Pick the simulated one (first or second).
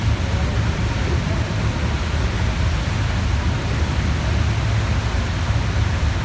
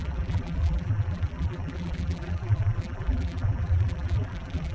second